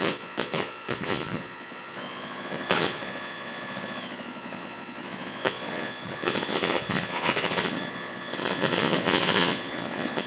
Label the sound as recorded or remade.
remade